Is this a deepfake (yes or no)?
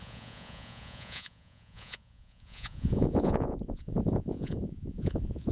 yes